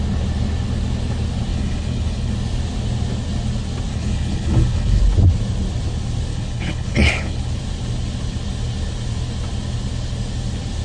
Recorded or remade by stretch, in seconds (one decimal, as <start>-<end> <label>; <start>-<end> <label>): 0.0-1.5 recorded; 1.5-2.3 remade; 2.3-3.9 recorded; 3.9-5.0 remade; 5.0-6.3 recorded; 6.3-7.5 remade; 7.5-10.8 recorded